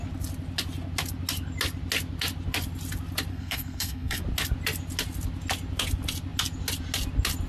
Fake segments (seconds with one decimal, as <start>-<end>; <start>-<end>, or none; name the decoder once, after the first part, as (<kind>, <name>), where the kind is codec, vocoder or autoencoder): 3.3-4.2 (codec, SNAC)